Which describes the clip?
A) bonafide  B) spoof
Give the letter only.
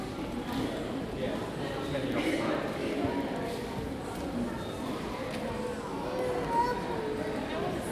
A